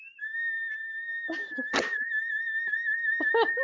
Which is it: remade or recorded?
recorded